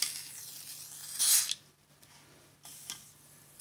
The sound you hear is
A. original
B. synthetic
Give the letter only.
A